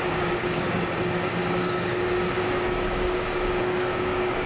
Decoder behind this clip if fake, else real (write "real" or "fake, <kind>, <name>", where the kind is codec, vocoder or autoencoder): fake, codec, DAC